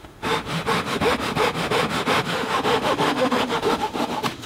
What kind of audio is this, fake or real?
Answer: fake